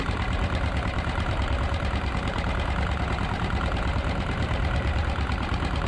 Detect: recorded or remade remade